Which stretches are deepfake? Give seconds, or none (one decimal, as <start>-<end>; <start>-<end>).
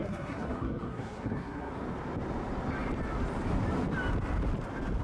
0.0-1.7